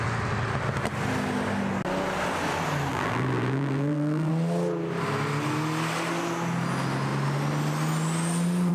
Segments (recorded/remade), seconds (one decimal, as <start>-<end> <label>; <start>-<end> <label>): 0.0-2.9 recorded; 2.9-4.3 remade; 4.3-8.7 recorded